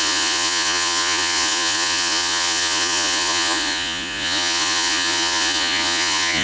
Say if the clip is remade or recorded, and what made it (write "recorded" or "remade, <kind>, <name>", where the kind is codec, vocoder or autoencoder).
remade, vocoder, Vocos